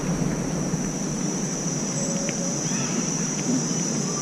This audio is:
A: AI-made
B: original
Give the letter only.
A